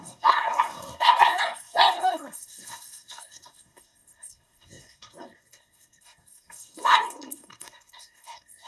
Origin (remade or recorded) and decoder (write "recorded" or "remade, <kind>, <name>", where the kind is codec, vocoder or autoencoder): remade, codec, SNAC